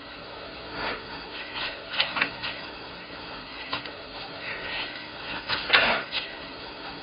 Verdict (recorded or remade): remade